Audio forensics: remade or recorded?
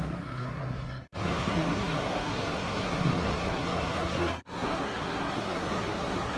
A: remade